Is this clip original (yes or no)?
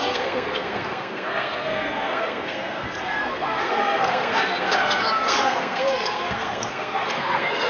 no